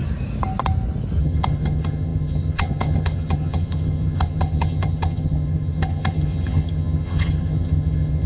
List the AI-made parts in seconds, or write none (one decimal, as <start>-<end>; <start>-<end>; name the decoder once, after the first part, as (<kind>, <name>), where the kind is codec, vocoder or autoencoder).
1.2-8.3 (vocoder, HiFi-GAN)